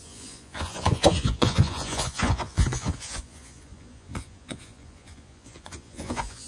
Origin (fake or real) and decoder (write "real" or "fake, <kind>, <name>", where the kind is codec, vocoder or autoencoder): fake, vocoder, Vocos